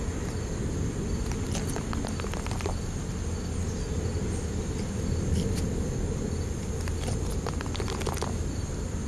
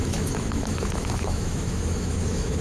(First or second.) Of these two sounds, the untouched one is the first